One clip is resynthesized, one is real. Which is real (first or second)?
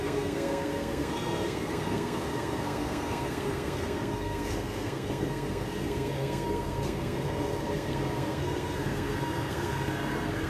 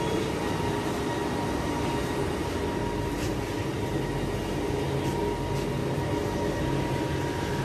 second